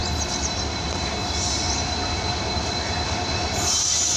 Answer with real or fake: real